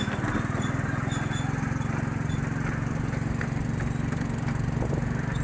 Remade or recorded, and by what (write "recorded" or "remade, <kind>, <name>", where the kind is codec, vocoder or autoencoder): recorded